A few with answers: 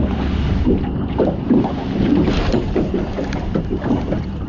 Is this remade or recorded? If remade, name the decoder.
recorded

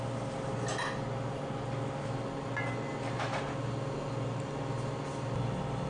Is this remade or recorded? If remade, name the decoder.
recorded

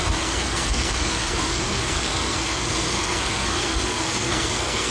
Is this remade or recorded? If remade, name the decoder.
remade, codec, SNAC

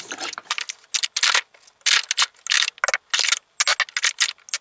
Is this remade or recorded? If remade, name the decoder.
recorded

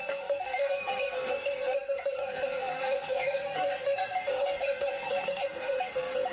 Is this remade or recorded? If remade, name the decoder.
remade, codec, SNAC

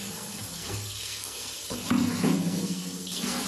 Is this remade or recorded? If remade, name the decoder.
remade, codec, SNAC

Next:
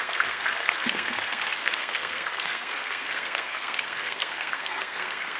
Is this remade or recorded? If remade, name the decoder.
remade, codec, SNAC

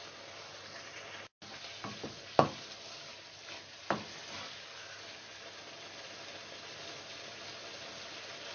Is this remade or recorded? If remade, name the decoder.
recorded